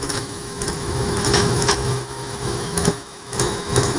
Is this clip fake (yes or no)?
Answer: yes